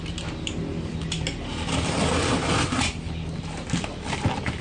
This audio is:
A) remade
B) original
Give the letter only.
B